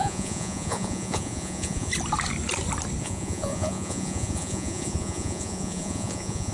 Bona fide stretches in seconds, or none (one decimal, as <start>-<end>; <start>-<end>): 1.9-3.0